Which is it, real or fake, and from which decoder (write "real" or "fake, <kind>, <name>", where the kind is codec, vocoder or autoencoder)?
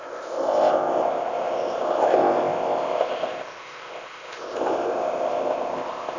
fake, codec, ZipCodec